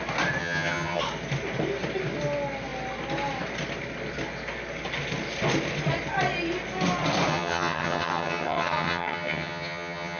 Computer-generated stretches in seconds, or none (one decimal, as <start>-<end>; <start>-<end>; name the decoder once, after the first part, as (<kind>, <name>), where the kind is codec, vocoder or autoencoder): 0.4-1.0 (vocoder, HiFi-GAN); 7.3-10.2